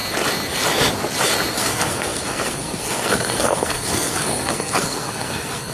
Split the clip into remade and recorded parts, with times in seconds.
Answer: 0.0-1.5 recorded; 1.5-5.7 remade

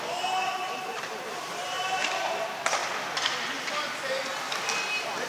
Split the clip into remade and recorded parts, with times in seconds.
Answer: 0.0-2.8 remade; 2.8-4.8 recorded; 4.8-5.3 remade